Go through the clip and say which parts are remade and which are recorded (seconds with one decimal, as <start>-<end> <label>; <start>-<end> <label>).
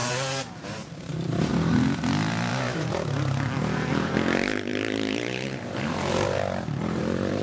0.0-1.5 remade; 1.5-2.5 recorded; 2.5-7.4 remade